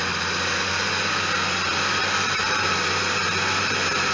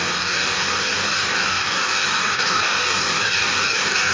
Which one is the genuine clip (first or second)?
first